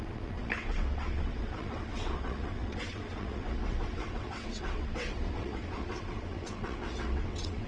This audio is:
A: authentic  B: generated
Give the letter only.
B